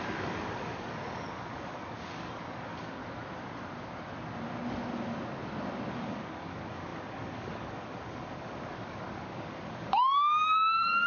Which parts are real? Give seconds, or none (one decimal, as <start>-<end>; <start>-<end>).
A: 3.0-5.9